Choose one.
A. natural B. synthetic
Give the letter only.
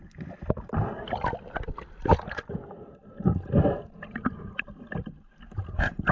A